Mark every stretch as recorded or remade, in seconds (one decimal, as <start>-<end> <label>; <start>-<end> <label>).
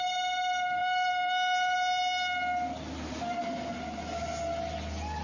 0.0-5.2 recorded